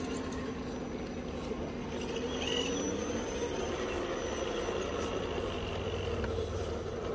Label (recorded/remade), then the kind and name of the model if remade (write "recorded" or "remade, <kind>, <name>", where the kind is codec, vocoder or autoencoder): recorded